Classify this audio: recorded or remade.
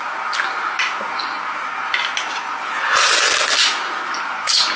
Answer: recorded